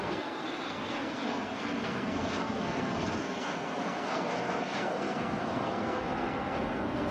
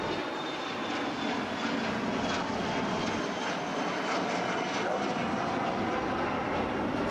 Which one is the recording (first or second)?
second